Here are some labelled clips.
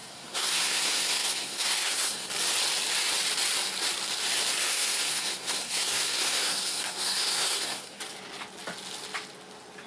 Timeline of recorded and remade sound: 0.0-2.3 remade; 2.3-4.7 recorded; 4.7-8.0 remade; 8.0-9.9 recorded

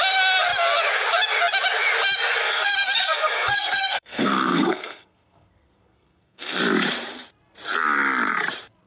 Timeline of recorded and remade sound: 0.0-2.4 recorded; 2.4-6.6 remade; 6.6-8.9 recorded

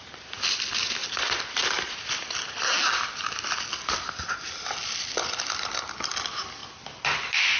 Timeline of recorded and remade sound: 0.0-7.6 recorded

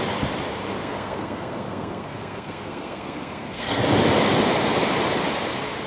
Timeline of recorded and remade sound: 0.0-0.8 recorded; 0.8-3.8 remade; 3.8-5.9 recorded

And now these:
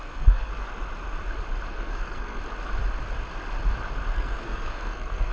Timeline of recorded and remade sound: 0.0-0.5 remade; 0.5-1.7 recorded; 1.7-2.4 remade; 2.4-4.1 recorded; 4.1-5.3 remade